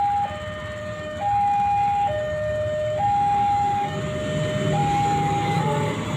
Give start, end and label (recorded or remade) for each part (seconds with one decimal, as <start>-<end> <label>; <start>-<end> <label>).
0.0-0.8 recorded; 0.8-4.0 remade; 4.0-4.8 recorded; 4.8-5.6 remade; 5.6-6.2 recorded